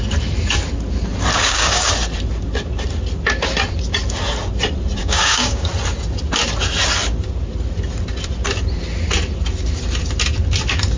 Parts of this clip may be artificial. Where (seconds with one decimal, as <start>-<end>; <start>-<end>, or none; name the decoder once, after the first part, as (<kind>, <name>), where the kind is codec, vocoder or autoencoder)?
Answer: 1.3-1.9 (codec, DAC); 5.0-5.7